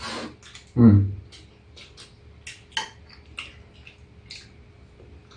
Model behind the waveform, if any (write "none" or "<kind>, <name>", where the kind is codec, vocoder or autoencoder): none